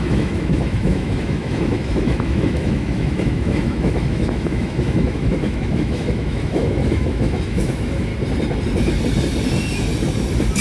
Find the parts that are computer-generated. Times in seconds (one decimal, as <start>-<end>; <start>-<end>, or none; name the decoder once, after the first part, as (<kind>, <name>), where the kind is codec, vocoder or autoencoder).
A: 0.0-8.1 (autoencoder, DAC-VAE)